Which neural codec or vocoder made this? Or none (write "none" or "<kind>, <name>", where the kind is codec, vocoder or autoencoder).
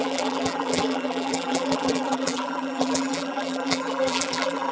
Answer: vocoder, BigVGAN v2